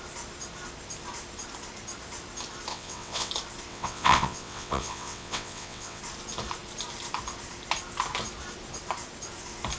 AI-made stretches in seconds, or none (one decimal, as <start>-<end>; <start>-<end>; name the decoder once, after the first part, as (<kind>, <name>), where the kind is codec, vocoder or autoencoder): 2.7-3.3 (vocoder, WaveNeXt); 3.7-6.0